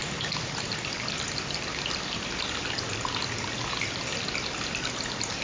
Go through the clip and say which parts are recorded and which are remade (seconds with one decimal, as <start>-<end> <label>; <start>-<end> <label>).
0.0-5.4 recorded